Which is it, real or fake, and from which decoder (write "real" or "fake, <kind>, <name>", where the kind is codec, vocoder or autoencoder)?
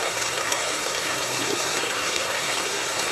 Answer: fake, codec, SNAC